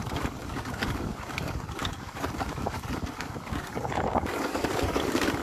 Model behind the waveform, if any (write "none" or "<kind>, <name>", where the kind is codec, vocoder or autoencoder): codec, DAC